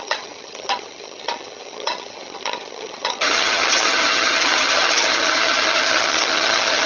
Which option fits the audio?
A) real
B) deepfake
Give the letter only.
B